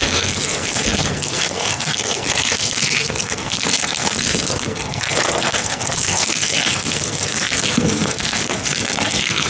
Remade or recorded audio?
remade